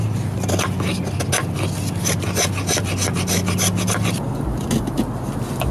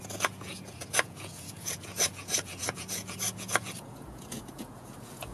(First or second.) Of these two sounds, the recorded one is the first